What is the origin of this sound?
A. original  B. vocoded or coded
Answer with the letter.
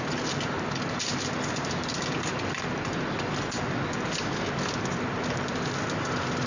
A